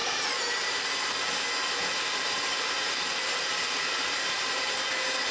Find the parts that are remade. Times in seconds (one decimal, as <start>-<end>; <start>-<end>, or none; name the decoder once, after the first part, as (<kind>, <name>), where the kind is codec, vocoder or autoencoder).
0.0-0.8 (vocoder, BigVGAN v2); 1.6-4.8